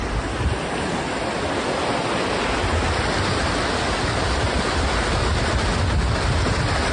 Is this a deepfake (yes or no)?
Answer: no